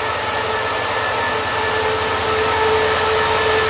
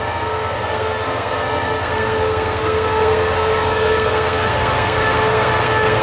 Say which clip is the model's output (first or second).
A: second